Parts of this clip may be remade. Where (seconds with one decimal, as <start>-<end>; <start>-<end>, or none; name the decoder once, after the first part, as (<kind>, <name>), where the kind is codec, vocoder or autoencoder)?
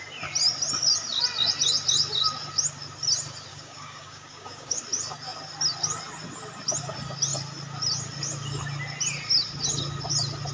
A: 3.5-4.8 (codec, DAC)